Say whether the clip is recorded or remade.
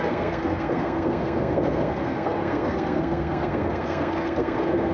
remade